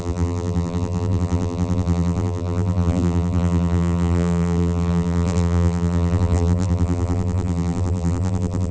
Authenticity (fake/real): fake